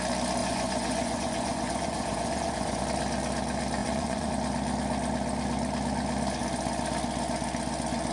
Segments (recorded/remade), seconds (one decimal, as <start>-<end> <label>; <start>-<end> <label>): 0.0-0.4 recorded; 0.4-2.8 remade; 2.8-3.8 recorded; 3.8-4.3 remade; 4.3-8.1 recorded